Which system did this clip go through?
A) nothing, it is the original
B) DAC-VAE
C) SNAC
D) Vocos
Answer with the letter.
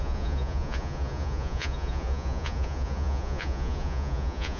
D